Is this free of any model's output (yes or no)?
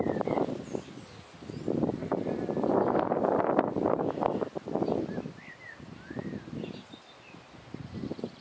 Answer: yes